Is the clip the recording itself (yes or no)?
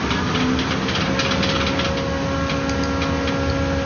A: yes